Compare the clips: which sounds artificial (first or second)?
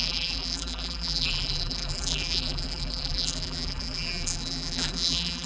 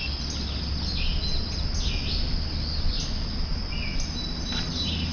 first